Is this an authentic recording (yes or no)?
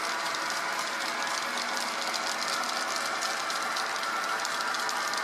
yes